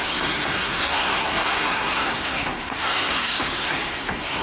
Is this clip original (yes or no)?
no